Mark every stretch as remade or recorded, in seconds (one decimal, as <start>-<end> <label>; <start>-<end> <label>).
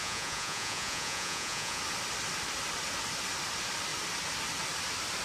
0.0-1.8 remade; 1.8-5.2 recorded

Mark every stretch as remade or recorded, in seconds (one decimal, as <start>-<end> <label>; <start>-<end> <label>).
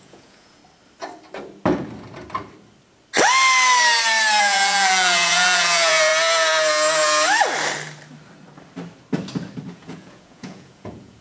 0.0-0.6 remade; 0.6-4.4 recorded; 4.4-6.1 remade; 6.1-9.7 recorded; 9.7-11.2 remade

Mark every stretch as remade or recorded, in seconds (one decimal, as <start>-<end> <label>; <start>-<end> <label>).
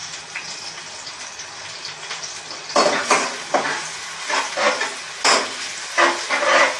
0.0-6.8 recorded